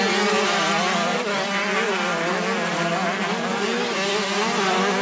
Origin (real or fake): real